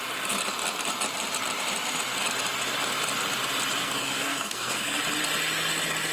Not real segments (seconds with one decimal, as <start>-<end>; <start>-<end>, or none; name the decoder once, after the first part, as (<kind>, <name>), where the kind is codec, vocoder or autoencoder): 3.8-5.0 (codec, SNAC)